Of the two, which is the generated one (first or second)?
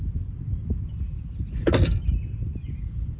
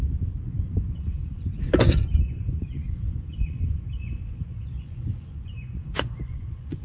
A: second